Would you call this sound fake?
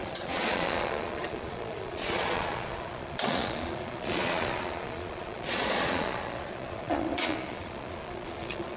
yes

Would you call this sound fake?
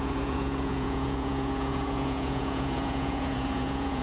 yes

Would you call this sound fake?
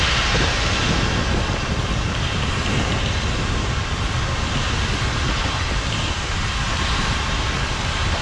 yes